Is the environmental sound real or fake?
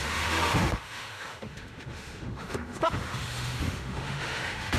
fake